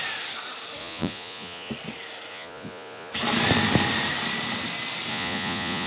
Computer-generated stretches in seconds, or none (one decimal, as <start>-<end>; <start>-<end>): 0.8-1.7; 2.3-3.1; 5.1-5.9